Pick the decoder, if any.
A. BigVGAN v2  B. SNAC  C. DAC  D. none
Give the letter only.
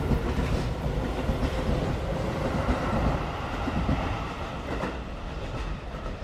A